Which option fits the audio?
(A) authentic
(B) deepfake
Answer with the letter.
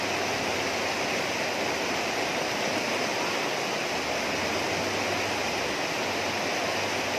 A